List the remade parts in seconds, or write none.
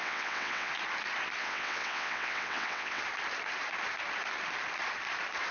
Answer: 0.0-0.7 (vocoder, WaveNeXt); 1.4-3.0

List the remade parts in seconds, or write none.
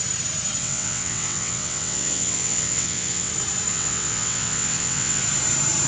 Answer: 0.6-3.3 (vocoder, WaveNeXt); 3.7-5.2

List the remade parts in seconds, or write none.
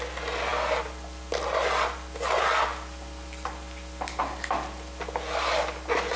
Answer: none